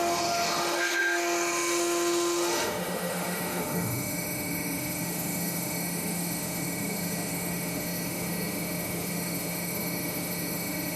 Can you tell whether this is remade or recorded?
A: remade